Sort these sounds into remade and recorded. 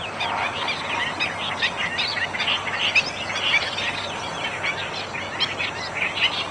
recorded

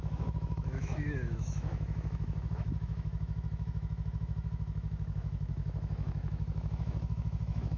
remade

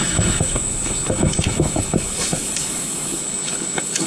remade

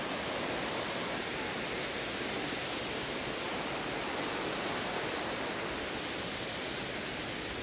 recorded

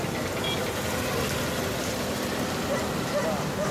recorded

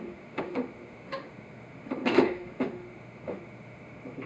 remade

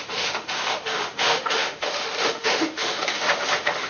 remade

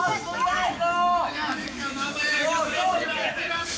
remade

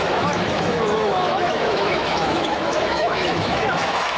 remade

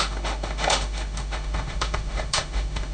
remade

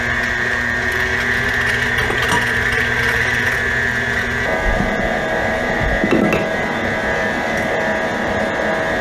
recorded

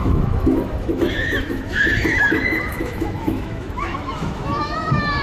remade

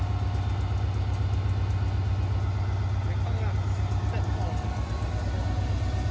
recorded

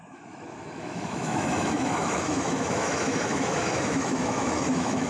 remade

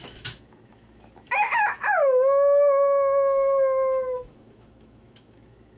remade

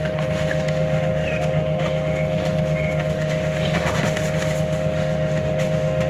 remade